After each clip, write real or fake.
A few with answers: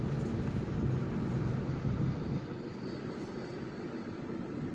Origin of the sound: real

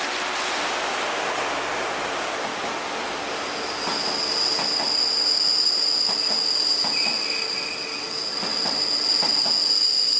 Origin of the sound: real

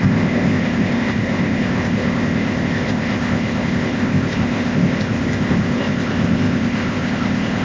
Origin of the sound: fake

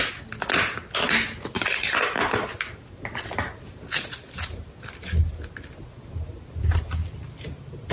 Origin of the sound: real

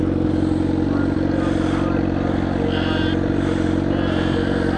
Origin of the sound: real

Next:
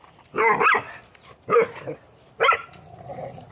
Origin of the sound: real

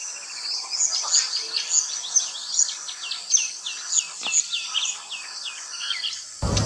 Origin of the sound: real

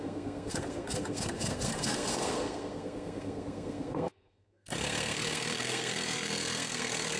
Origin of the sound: fake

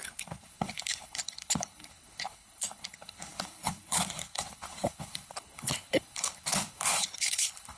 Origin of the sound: fake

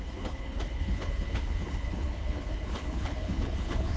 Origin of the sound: fake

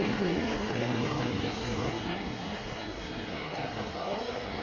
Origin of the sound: fake